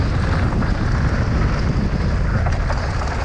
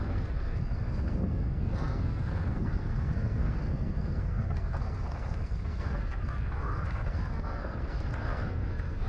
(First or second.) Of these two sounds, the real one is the first